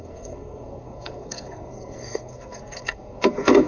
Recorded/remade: remade